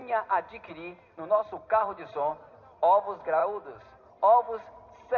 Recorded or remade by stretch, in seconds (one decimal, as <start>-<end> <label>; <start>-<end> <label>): 0.0-0.7 remade; 0.7-1.4 recorded; 1.4-2.3 remade; 2.3-5.2 recorded